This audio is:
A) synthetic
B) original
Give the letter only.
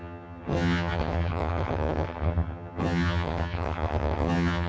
A